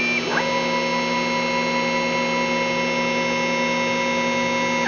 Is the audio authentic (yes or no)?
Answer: yes